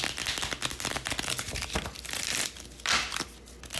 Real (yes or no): yes